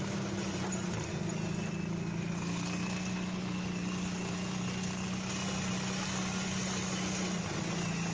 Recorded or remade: recorded